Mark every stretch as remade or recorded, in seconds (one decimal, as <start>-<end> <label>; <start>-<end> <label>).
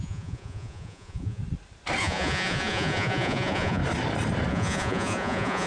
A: 0.0-1.4 remade; 1.4-2.0 recorded; 2.0-3.8 remade; 3.8-4.5 recorded; 4.5-5.7 remade